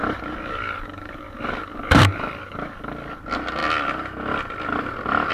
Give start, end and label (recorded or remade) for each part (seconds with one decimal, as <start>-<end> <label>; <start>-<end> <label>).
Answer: 0.0-3.2 remade; 3.2-5.3 recorded

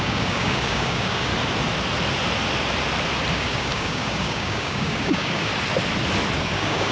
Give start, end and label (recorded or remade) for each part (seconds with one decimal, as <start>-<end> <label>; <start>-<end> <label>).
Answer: 0.0-1.3 remade; 1.3-3.3 recorded; 3.3-5.5 remade; 5.5-6.4 recorded; 6.4-6.9 remade